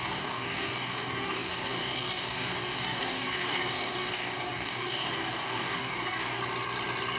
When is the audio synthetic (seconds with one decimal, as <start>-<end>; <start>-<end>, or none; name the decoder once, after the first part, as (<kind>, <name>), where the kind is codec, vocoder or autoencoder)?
0.0-6.4 (codec, DAC)